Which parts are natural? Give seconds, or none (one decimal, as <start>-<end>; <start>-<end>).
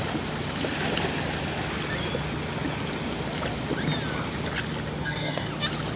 0.0-5.0; 5.5-6.0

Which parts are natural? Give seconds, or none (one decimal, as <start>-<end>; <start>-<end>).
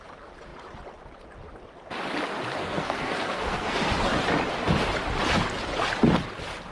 0.0-2.6; 3.9-6.7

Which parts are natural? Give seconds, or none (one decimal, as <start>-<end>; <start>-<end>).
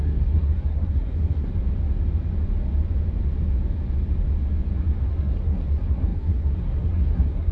1.5-5.1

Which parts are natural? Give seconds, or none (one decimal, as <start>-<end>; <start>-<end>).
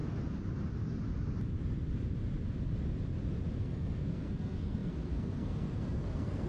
0.0-3.6